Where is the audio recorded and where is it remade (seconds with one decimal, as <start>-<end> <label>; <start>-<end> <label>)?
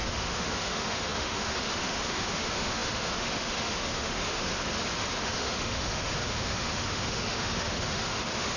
0.0-4.5 remade; 4.5-5.2 recorded; 5.2-8.6 remade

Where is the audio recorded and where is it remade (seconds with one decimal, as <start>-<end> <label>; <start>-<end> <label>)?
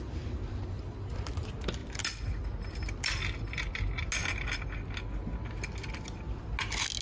0.0-7.0 recorded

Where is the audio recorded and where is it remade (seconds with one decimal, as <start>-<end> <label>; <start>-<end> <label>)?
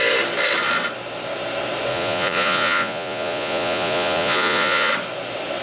0.0-1.9 recorded; 1.9-4.9 remade; 4.9-5.6 recorded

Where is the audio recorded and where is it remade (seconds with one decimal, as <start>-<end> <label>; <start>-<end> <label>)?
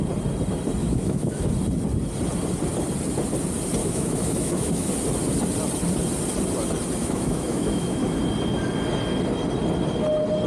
0.0-0.8 recorded; 0.8-1.5 remade; 1.5-3.8 recorded; 3.8-4.9 remade; 4.9-7.0 recorded; 7.0-8.2 remade; 8.2-10.5 recorded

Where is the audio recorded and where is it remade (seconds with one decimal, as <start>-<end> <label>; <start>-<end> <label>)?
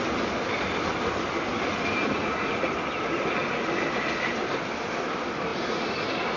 0.0-2.0 recorded; 2.0-2.7 remade; 2.7-6.4 recorded